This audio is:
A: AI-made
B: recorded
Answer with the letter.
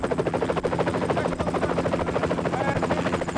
B